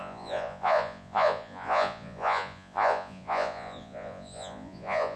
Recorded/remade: remade